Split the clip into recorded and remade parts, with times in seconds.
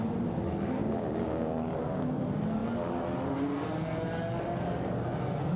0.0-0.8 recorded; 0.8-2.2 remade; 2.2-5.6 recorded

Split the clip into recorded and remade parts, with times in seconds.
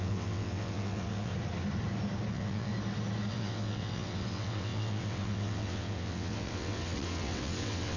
0.0-1.3 remade; 1.3-2.3 recorded; 2.3-2.7 remade; 2.7-3.3 recorded; 3.3-8.0 remade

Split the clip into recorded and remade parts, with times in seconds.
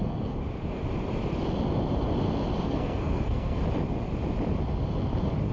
0.0-0.4 remade; 0.4-2.6 recorded; 2.6-3.6 remade; 3.6-5.5 recorded